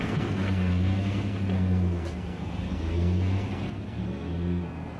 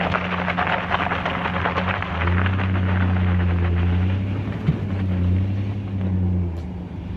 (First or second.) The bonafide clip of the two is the second